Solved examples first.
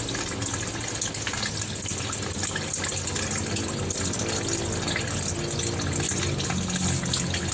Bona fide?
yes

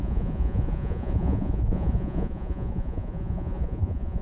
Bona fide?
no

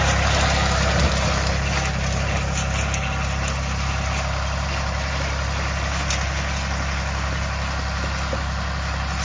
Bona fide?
yes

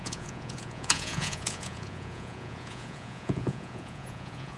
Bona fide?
no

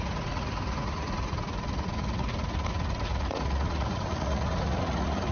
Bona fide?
no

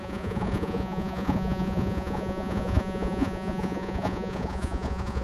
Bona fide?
no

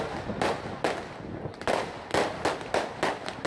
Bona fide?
yes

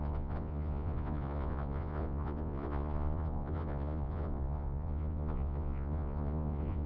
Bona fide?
no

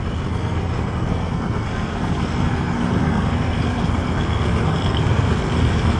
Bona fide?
no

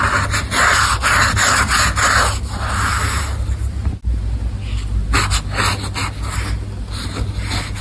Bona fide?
yes